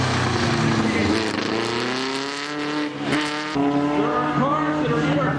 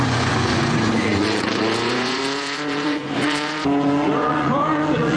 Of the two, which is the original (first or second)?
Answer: first